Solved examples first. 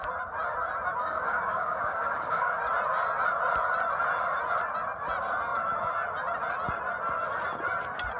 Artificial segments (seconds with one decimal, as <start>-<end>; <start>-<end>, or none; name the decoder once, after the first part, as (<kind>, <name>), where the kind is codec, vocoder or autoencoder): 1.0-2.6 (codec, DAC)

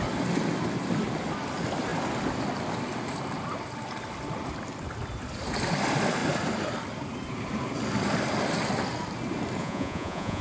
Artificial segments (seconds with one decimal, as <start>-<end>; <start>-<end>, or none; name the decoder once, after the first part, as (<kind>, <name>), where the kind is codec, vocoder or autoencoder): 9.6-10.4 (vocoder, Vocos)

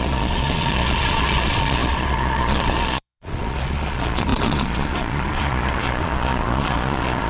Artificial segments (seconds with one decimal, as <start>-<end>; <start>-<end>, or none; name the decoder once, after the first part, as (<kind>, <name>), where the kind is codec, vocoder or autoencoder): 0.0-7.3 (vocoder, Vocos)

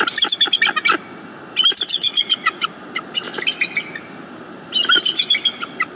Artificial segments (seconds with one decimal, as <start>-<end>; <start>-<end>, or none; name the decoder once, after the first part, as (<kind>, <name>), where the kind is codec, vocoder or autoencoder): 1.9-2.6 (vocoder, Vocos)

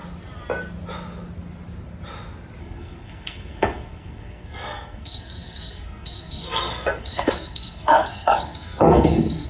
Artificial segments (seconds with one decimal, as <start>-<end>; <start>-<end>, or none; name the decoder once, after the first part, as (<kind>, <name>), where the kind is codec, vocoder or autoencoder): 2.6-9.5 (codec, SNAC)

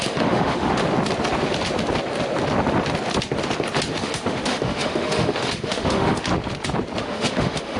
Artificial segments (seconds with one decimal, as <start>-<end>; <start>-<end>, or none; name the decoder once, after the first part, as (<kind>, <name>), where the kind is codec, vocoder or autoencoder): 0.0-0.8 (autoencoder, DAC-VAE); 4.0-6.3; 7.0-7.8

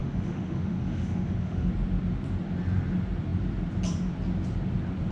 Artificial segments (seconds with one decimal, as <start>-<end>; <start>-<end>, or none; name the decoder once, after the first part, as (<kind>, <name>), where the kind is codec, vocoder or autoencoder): 0.0-1.7 (autoencoder, DAC-VAE)

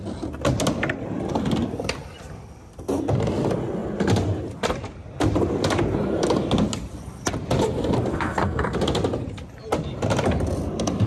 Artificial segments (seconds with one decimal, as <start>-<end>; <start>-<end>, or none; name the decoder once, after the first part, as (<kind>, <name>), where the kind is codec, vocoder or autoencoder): 8.1-8.6 (codec, SNAC)